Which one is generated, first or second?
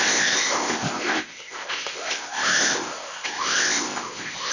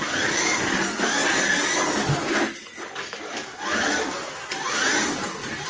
first